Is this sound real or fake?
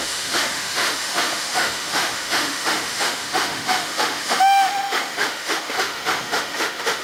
fake